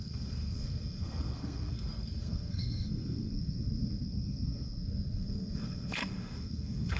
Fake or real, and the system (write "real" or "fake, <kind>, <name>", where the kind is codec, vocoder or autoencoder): fake, codec, SNAC